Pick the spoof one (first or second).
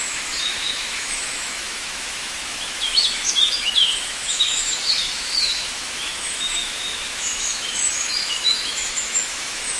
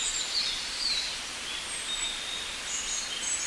first